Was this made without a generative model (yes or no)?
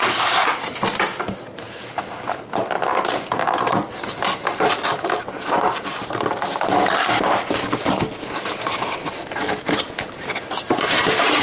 yes